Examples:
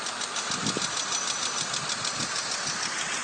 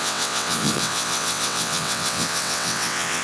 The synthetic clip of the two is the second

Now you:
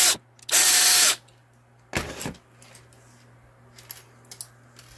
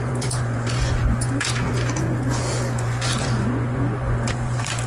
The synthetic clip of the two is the second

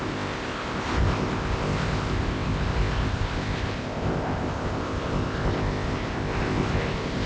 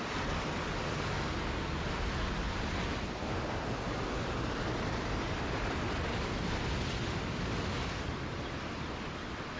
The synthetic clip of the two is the first